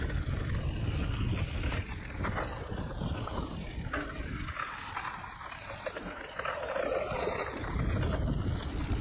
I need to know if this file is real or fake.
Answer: real